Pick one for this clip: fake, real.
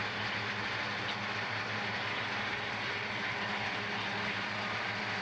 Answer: real